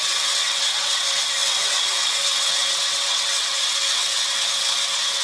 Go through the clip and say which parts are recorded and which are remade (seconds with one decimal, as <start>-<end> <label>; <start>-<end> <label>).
0.0-5.2 remade